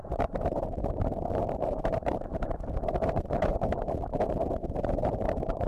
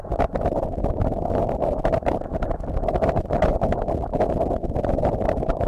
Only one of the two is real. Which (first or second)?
second